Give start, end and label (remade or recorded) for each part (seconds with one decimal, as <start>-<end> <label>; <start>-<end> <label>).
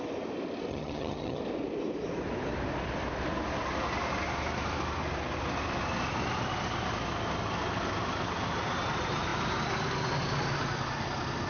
0.0-0.7 recorded; 0.7-1.4 remade; 1.4-11.5 recorded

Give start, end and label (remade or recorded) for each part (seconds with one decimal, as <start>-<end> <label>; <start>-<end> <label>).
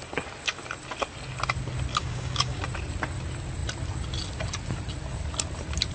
0.0-2.0 recorded; 2.0-2.6 remade; 2.6-5.9 recorded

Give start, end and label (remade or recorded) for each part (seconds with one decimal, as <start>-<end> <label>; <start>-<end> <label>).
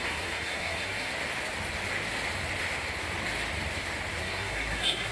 0.0-1.1 remade; 1.1-4.2 recorded; 4.2-5.1 remade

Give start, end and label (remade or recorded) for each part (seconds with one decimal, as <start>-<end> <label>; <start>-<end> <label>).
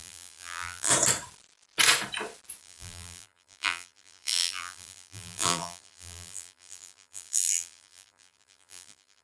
0.0-0.9 remade; 0.9-2.6 recorded; 2.6-9.2 remade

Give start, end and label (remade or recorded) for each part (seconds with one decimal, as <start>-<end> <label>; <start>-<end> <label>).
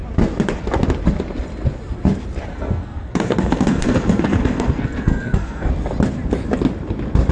0.0-2.5 recorded; 2.5-5.7 remade; 5.7-7.3 recorded